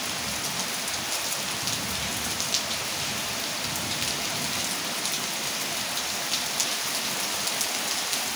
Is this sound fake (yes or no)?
no